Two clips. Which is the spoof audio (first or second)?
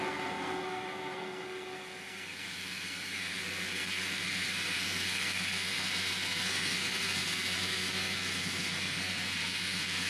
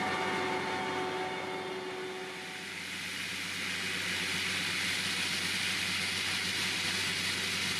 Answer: first